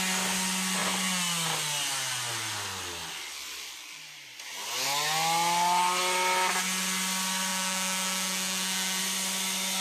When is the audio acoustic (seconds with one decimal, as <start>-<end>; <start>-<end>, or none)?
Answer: 0.0-7.5; 9.0-9.8